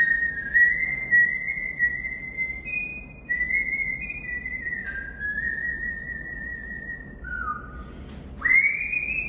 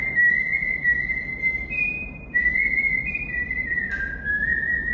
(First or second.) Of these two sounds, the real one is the first